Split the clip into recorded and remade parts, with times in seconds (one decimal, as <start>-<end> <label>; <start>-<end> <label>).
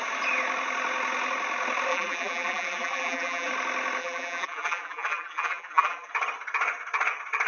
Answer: 0.0-1.9 recorded; 1.9-3.5 remade; 3.5-4.0 recorded; 4.0-6.1 remade; 6.1-7.5 recorded